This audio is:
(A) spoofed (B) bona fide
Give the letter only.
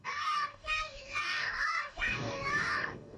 A